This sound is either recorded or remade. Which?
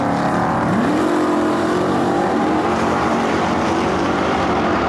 remade